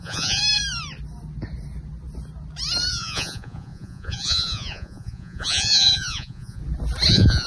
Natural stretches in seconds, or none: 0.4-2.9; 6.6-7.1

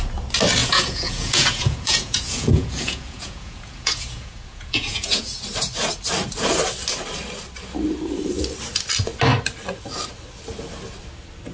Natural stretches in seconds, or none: 0.0-0.6; 5.4-11.5

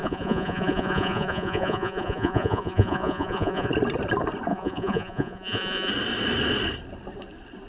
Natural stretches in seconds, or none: 3.7-4.5; 5.9-7.7

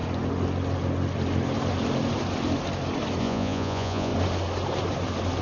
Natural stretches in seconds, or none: 0.0-3.2; 4.1-5.4